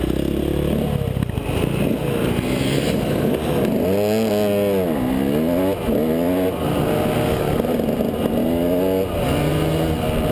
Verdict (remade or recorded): recorded